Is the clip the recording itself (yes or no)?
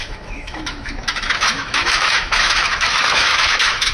no